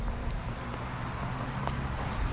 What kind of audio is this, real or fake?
real